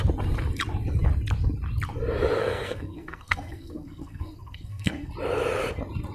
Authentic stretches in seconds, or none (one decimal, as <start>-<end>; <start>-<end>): 0.0-2.4; 5.1-6.1

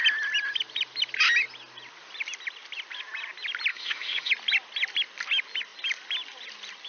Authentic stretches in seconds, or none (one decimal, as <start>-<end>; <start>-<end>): 0.0-3.7; 4.3-6.9